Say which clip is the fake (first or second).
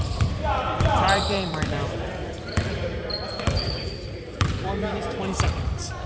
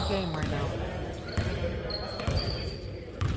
first